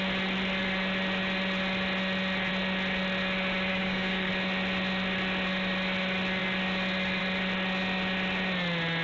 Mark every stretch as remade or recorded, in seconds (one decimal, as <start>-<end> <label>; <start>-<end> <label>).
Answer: 0.0-3.7 recorded; 3.7-4.3 remade; 4.3-9.0 recorded